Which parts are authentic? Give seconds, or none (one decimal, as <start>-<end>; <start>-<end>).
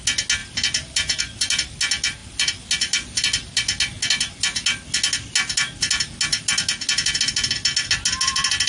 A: 0.0-8.7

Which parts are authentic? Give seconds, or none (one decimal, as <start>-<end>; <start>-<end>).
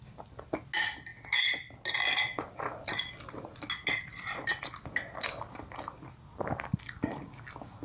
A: 0.0-7.8